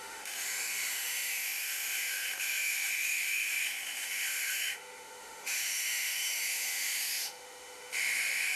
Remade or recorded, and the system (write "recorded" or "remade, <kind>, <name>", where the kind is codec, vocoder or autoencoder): remade, autoencoder, DAC-VAE